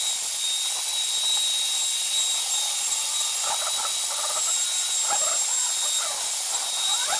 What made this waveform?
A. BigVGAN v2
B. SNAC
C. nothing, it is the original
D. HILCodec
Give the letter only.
C